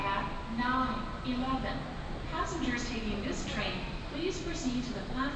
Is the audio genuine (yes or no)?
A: yes